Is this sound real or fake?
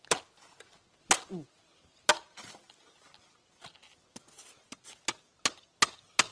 real